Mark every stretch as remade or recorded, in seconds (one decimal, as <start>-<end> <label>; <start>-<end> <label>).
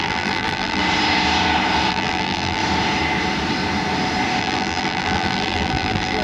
0.0-0.8 remade; 0.8-1.9 recorded; 1.9-2.6 remade; 2.6-4.4 recorded; 4.4-6.2 remade